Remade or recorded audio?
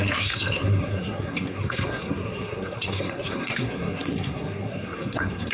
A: remade